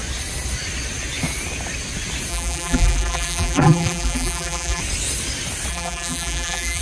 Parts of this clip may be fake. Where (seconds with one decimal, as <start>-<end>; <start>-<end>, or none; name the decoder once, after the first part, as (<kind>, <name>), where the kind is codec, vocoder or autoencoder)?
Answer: 2.3-4.8 (vocoder, BigVGAN v2); 5.7-6.8